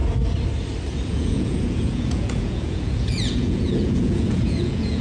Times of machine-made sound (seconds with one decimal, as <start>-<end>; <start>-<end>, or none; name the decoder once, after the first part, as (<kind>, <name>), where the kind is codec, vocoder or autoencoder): 1.1-5.0 (vocoder, Vocos)